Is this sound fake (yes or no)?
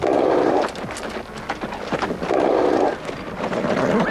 no